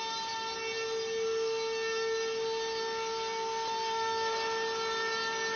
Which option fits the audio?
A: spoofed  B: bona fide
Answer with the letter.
B